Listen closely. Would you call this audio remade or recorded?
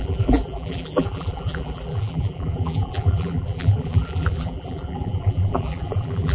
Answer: remade